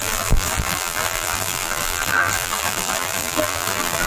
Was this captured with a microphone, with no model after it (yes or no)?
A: no